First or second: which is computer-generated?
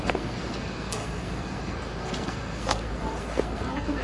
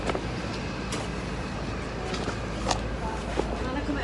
first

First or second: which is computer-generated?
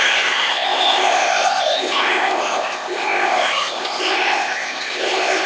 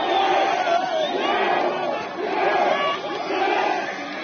first